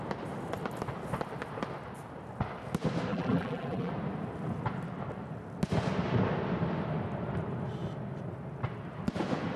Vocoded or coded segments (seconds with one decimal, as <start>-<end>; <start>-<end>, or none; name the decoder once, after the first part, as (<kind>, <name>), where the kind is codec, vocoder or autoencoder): 3.1-3.9 (vocoder, BigVGAN v2)